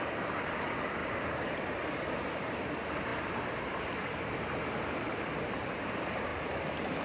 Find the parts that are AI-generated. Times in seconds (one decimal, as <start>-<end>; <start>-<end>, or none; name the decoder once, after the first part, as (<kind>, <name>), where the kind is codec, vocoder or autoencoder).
none